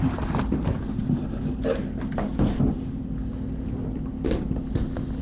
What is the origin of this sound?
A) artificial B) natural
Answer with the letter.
B